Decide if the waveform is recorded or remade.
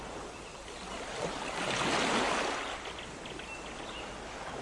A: recorded